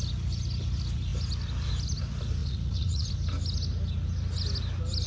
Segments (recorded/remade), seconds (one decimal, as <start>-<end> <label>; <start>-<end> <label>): 0.0-2.4 recorded; 2.4-3.1 remade; 3.1-5.1 recorded